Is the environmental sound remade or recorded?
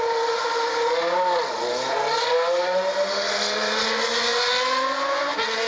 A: recorded